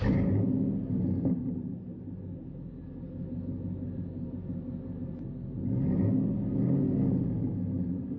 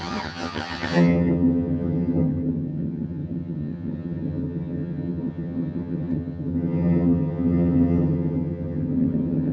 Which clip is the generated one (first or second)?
second